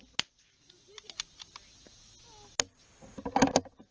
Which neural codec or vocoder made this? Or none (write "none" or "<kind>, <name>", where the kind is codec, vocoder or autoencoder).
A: none